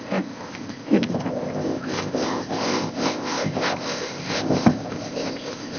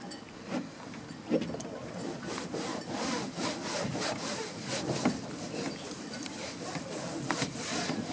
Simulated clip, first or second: first